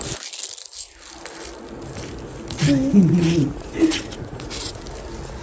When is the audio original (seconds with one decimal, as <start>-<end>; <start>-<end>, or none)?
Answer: 0.0-2.9; 4.8-5.4

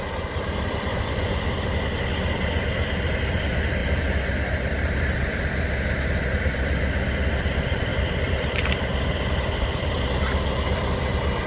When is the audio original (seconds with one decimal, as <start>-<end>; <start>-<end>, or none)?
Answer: 0.0-0.9; 1.4-11.5

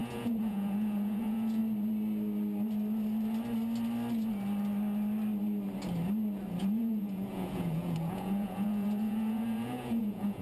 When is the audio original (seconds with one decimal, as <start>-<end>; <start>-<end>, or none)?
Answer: 1.6-6.6